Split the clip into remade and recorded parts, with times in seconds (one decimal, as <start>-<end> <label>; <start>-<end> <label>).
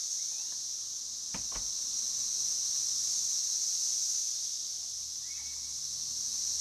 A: 0.0-6.6 recorded